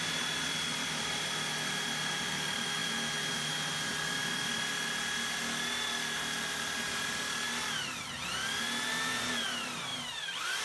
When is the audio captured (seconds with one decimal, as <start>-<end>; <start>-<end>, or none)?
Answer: 0.0-10.6